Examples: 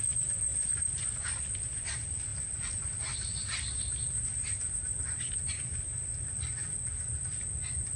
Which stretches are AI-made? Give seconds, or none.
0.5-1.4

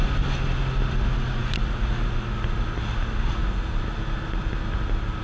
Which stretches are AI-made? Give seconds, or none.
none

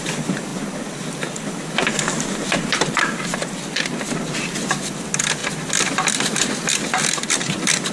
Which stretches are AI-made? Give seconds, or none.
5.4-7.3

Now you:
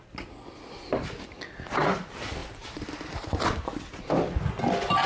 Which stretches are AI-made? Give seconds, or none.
none

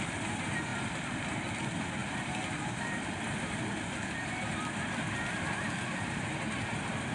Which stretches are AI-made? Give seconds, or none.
0.7-1.6; 2.0-6.3

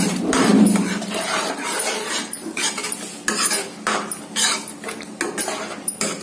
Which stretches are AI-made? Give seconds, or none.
0.0-2.8; 5.8-6.2

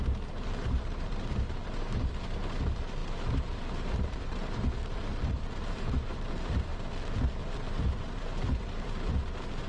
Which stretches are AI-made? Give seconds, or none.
0.0-6.7; 7.7-9.7

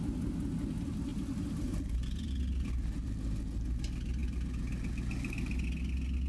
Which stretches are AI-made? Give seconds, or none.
1.1-3.1